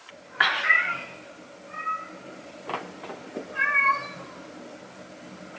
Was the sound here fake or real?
real